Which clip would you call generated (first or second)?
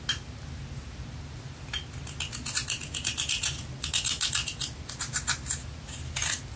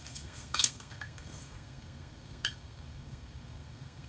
second